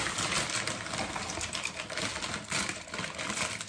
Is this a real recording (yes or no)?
yes